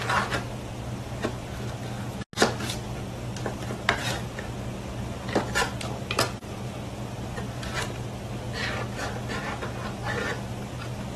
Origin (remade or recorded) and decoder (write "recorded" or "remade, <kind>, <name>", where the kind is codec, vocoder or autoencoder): recorded